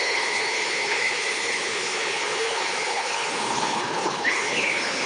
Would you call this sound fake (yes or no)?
yes